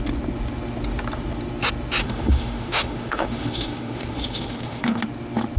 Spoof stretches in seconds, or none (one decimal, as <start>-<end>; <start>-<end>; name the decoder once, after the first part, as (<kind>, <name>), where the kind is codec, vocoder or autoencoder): 2.0-5.0 (autoencoder, DAC-VAE)